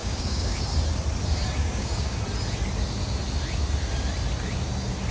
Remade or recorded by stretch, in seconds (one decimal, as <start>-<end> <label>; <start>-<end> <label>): 0.0-0.6 remade; 0.6-1.6 recorded; 1.6-2.2 remade; 2.2-5.1 recorded